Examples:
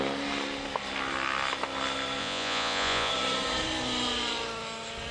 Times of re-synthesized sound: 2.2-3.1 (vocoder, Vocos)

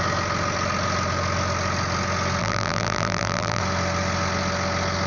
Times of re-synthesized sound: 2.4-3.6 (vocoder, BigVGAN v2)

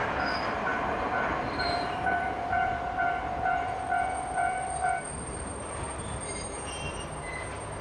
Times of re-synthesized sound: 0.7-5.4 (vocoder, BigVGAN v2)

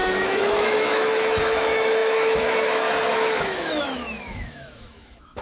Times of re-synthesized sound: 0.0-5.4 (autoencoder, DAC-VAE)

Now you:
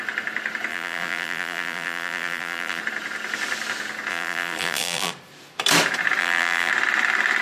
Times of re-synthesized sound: 0.7-2.8 (vocoder, BigVGAN v2); 4.1-5.1; 6.2-6.7

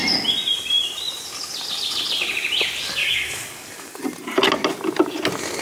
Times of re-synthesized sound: 3.0-4.0 (codec, DAC)

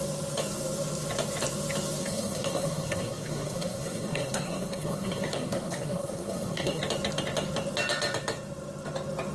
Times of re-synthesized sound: 2.0-6.8 (codec, SNAC)

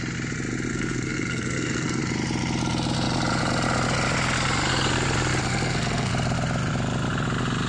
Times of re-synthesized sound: 0.7-2.0 (codec, SNAC); 5.4-6.1